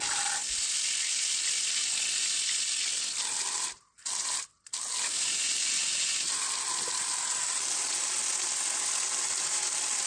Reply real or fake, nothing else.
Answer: real